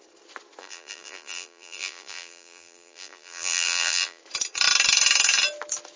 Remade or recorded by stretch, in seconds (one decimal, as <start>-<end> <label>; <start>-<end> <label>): 0.0-0.6 recorded; 0.6-4.2 remade; 4.2-6.0 recorded